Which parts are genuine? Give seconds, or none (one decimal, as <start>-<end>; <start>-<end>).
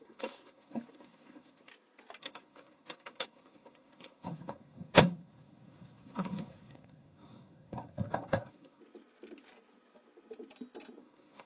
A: 1.7-2.2; 8.8-11.0